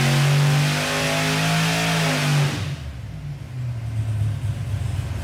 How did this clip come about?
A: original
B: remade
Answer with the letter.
A